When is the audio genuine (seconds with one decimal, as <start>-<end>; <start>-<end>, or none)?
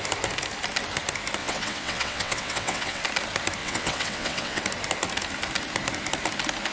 0.0-1.4; 3.0-3.6; 4.6-6.7